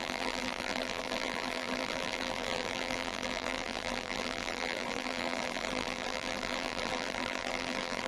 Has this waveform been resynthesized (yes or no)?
yes